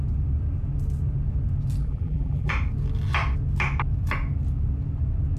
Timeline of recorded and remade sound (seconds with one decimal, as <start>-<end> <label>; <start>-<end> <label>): 0.0-1.8 recorded; 1.8-2.5 remade; 2.5-5.4 recorded